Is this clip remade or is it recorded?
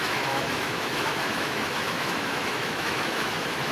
remade